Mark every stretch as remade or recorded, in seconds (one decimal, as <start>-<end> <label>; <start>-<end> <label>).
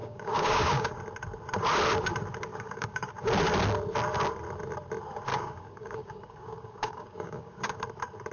0.0-1.0 remade; 1.0-2.5 recorded; 2.5-3.1 remade; 3.1-5.3 recorded; 5.3-7.8 remade; 7.8-8.3 recorded